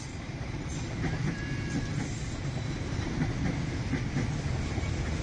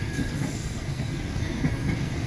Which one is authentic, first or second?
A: first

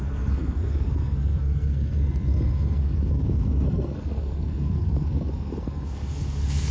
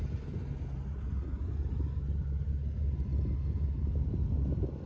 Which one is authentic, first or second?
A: second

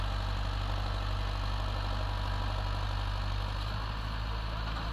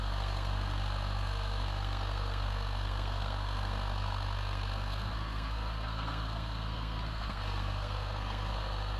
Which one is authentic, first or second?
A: first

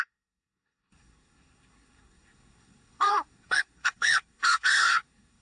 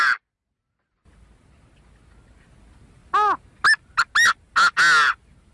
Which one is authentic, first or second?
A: second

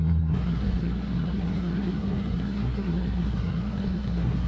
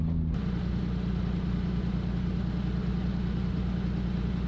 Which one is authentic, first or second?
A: second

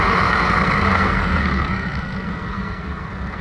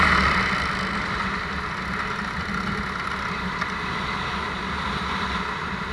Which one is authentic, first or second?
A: second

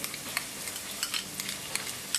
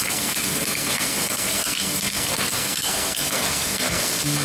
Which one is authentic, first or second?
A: first